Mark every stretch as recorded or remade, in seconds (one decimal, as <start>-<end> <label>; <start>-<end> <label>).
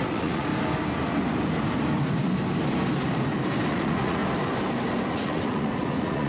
0.0-0.5 remade; 0.5-3.7 recorded; 3.7-4.2 remade; 4.2-5.1 recorded; 5.1-6.3 remade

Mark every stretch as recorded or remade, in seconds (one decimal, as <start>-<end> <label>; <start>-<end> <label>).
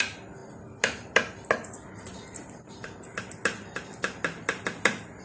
0.0-5.2 recorded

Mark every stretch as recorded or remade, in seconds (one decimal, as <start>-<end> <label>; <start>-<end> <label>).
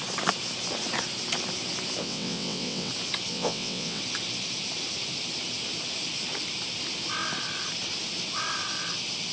0.0-2.0 recorded; 2.0-2.9 remade; 2.9-3.3 recorded; 3.3-4.0 remade; 4.0-9.3 recorded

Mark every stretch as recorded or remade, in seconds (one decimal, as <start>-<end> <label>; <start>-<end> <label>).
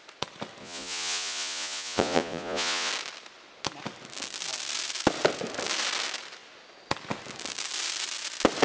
0.0-0.6 recorded; 0.6-2.9 remade; 2.9-8.6 recorded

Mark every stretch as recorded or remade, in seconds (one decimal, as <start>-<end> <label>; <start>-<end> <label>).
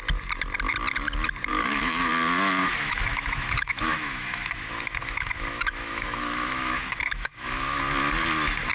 0.0-1.5 recorded; 1.5-2.1 remade; 2.1-2.6 recorded; 2.6-7.8 remade; 7.8-8.7 recorded